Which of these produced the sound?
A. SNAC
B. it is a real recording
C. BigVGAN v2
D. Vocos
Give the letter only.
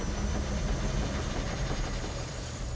C